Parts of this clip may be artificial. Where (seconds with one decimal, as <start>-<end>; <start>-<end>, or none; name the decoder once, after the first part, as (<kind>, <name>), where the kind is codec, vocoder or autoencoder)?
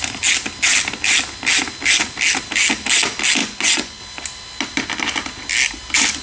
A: 3.4-4.0 (vocoder, Vocos)